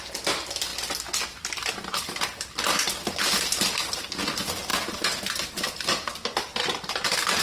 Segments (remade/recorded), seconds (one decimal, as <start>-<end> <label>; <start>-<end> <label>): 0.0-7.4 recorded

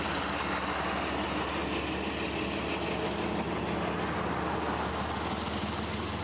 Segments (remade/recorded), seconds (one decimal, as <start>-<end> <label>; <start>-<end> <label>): 0.0-6.2 recorded

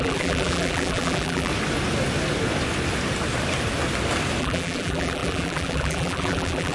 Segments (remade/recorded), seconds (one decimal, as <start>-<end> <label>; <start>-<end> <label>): 0.0-1.5 remade; 1.5-4.4 recorded; 4.4-6.7 remade

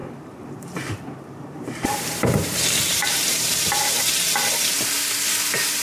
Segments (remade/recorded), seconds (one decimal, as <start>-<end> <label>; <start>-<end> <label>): 0.0-3.5 remade; 3.5-5.8 recorded

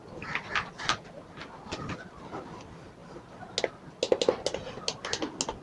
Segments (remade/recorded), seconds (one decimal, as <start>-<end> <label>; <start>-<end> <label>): 0.0-5.6 recorded